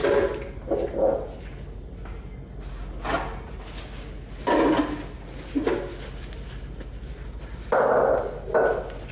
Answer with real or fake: real